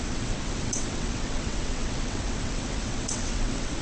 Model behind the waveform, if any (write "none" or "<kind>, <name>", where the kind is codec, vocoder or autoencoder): vocoder, WaveNeXt